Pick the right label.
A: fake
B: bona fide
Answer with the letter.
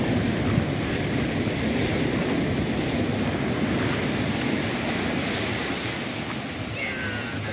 B